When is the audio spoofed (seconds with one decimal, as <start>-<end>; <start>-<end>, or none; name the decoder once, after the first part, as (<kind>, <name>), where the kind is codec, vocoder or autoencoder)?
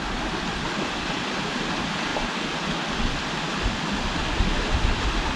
none